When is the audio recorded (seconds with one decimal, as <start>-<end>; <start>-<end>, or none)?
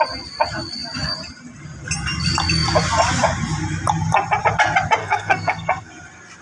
0.0-5.0; 5.9-6.4